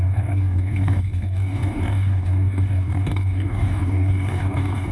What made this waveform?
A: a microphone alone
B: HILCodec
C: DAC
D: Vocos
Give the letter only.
C